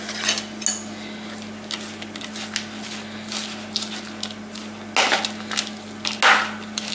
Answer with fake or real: real